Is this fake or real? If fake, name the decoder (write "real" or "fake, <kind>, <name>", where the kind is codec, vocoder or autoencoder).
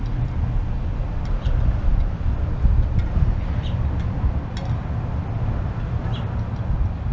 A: real